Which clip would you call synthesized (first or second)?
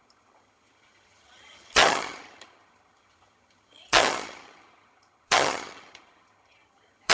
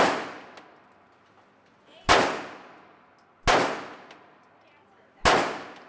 first